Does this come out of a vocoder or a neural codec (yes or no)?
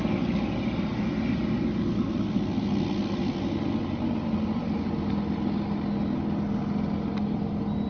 no